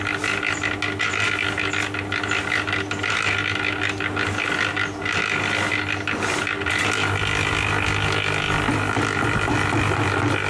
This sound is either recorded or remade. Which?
recorded